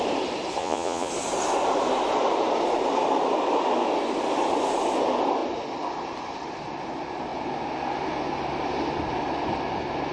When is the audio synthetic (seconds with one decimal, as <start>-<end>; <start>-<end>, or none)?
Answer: 0.6-1.1